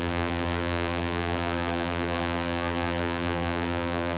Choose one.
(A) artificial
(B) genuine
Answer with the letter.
A